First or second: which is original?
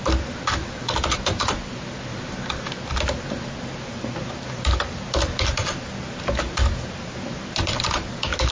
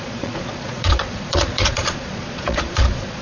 first